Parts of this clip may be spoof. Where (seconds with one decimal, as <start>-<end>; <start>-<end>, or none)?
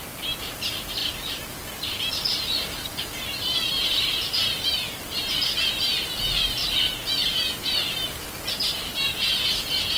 1.0-2.1; 3.8-4.5